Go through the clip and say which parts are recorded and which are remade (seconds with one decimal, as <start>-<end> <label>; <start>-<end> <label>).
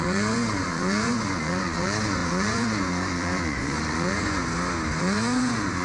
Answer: 0.0-4.4 remade; 4.4-5.0 recorded; 5.0-5.8 remade